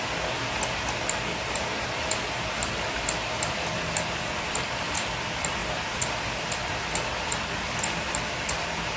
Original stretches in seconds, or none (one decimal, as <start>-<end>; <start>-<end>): 0.0-9.0